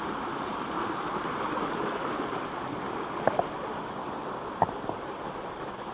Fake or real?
real